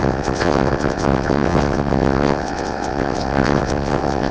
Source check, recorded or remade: remade